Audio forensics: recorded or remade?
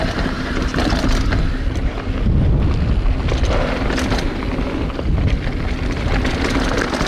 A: recorded